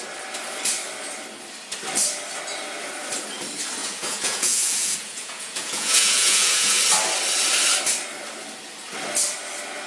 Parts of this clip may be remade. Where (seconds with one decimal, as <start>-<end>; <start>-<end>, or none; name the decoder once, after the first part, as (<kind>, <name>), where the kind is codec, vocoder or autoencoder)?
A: 3.8-6.8 (vocoder, Vocos)